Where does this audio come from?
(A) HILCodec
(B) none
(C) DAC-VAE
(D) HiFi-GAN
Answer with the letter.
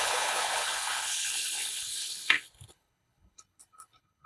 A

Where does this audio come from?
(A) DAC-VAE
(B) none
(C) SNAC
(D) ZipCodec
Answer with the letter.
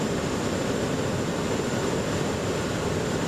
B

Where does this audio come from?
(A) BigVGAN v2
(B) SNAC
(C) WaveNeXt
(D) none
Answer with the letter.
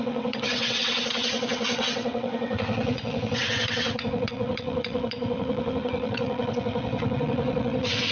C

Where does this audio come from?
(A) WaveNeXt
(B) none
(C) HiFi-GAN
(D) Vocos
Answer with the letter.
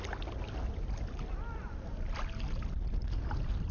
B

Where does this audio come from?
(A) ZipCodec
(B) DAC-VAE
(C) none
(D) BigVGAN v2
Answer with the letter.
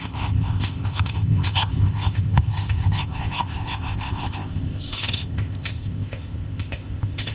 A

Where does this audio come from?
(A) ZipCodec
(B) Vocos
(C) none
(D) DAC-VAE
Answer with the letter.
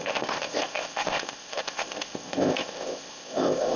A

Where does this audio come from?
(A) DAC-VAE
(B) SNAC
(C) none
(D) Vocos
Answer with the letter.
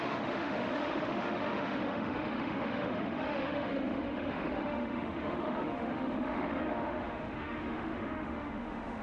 A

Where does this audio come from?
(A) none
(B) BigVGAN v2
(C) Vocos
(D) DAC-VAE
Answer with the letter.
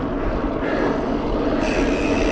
A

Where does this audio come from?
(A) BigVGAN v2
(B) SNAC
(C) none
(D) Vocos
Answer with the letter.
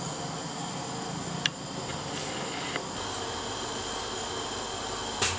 C